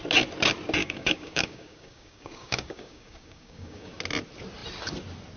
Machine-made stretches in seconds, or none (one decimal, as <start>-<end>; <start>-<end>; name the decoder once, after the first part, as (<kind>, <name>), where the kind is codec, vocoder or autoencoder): 0.8-4.0 (codec, DAC)